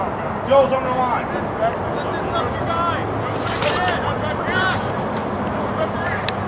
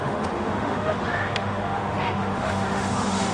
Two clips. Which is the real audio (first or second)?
first